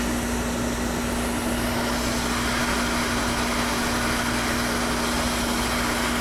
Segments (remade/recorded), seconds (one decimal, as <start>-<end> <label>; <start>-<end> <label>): 0.0-6.2 recorded